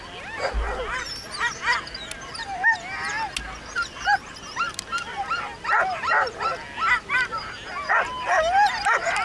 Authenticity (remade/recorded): recorded